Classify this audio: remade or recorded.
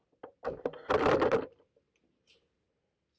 recorded